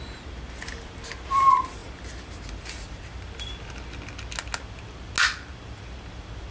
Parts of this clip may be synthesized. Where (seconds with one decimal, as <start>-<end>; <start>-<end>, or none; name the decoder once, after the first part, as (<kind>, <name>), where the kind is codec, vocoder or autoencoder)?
none